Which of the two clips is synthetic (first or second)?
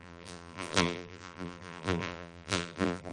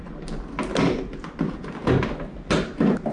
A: first